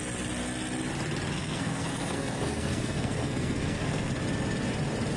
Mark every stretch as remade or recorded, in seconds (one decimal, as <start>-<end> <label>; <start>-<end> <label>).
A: 0.0-1.4 recorded; 1.4-4.1 remade; 4.1-5.2 recorded